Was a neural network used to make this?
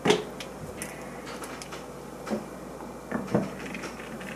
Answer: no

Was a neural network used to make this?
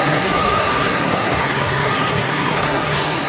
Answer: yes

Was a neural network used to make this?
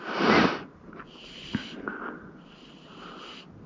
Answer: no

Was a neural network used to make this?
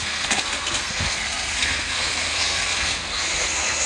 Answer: yes